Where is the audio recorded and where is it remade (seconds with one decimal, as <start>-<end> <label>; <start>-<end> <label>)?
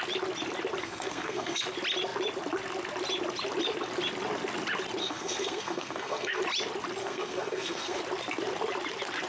0.0-0.8 recorded; 0.8-1.6 remade; 1.6-5.0 recorded; 5.0-6.4 remade; 6.4-7.0 recorded; 7.0-8.0 remade; 8.0-9.3 recorded